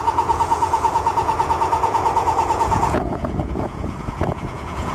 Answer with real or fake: fake